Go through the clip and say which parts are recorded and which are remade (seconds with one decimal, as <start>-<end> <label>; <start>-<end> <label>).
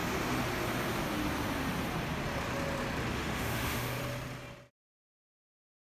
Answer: 0.0-3.1 recorded; 3.1-4.0 remade; 4.0-5.9 recorded